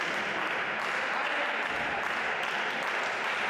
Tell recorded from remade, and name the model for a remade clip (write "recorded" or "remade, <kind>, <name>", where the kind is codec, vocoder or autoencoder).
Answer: recorded